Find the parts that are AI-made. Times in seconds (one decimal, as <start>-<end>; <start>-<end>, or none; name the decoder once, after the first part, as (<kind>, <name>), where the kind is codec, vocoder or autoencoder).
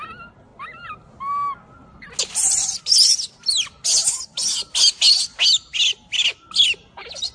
none